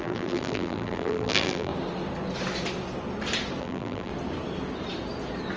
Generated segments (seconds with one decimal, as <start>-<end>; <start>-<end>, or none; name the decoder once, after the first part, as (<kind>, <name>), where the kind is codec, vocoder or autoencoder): 0.0-1.7 (vocoder, BigVGAN v2); 3.6-4.1